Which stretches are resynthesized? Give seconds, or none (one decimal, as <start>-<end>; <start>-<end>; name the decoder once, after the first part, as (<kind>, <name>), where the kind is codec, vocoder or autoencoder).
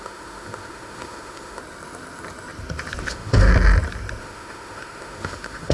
0.0-1.6 (autoencoder, DAC-VAE); 3.1-3.5; 4.2-5.7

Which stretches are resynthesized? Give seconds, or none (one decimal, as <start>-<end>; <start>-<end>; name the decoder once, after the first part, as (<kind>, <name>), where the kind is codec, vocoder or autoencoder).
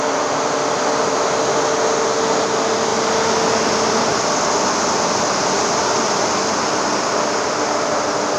none